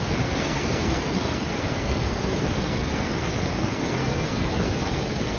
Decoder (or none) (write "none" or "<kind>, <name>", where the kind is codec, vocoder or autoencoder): codec, SNAC